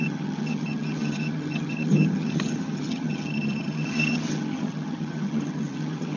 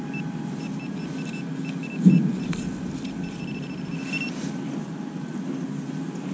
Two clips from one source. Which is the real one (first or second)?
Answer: second